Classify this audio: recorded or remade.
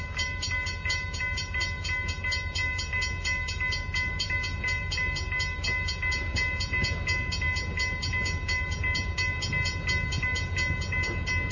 recorded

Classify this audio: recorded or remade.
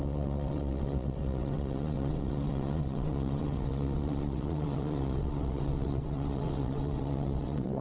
remade